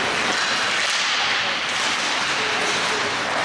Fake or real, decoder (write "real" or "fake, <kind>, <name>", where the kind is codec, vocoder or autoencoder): real